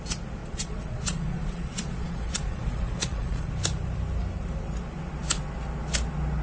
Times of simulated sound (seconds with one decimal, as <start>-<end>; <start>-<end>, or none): 0.4-3.5